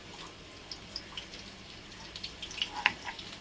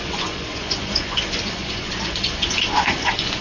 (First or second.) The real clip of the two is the first